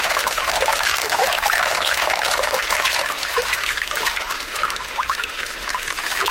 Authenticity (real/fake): fake